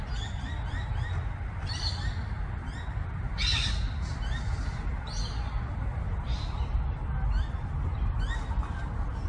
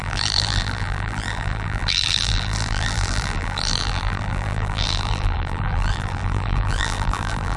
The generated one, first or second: second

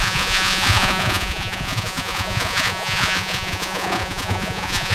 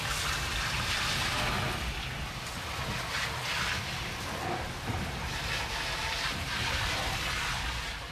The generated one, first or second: first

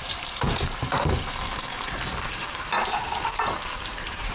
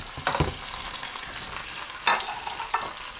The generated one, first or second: first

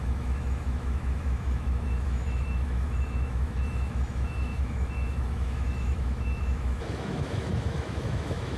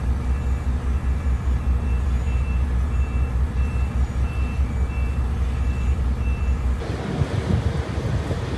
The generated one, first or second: first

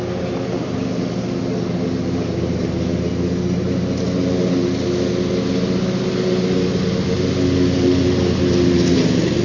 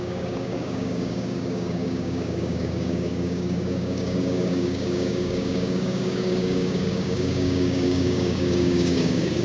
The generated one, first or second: second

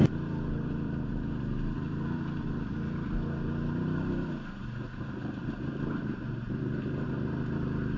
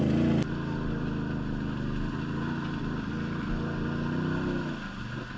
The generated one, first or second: first